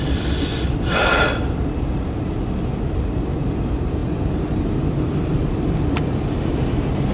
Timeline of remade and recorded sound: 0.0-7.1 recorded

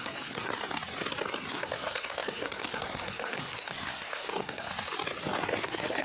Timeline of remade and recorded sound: 0.0-0.5 remade; 0.5-1.5 recorded; 1.5-4.7 remade; 4.7-5.6 recorded; 5.6-6.0 remade

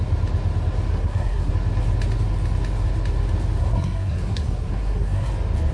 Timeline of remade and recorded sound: 0.0-0.9 recorded; 0.9-1.5 remade; 1.5-3.6 recorded; 3.6-5.3 remade; 5.3-5.7 recorded

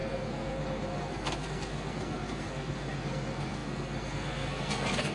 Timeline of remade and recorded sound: 0.0-5.1 remade

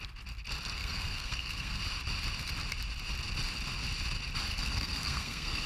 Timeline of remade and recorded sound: 0.0-0.8 recorded; 0.8-1.8 remade; 1.8-4.5 recorded; 4.5-5.7 remade

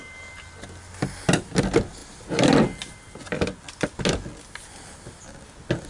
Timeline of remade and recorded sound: 0.0-5.9 recorded

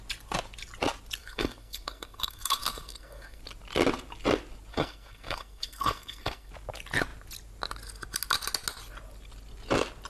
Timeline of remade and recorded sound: 0.0-1.2 recorded; 1.2-3.4 remade; 3.4-4.7 recorded; 4.7-6.5 remade; 6.5-10.1 recorded

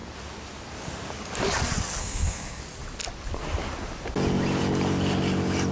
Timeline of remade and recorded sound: 0.0-2.0 recorded; 2.0-2.6 remade; 2.6-5.7 recorded